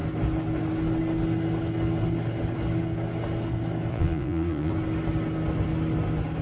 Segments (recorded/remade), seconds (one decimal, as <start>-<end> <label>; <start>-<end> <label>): 0.0-3.9 recorded; 3.9-4.7 remade; 4.7-6.4 recorded